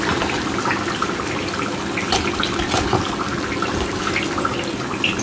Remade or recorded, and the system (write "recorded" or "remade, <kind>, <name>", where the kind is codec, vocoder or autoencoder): recorded